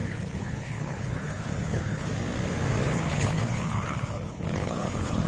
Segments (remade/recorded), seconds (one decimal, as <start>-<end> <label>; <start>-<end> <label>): 0.0-2.1 remade; 2.1-2.8 recorded; 2.8-5.3 remade

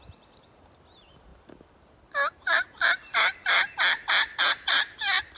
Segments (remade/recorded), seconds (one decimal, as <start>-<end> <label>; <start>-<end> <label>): 0.0-5.4 recorded

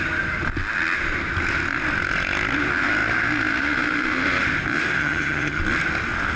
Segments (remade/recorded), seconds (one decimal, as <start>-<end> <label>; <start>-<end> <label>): 0.0-5.0 recorded; 5.0-5.6 remade; 5.6-6.4 recorded